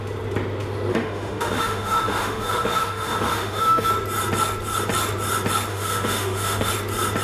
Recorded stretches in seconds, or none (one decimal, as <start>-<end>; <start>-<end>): 0.0-0.9; 3.9-5.7; 6.7-7.2